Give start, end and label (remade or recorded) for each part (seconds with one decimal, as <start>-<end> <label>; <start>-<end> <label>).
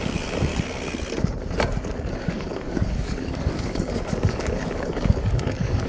0.0-0.5 remade; 0.5-2.2 recorded; 2.2-5.9 remade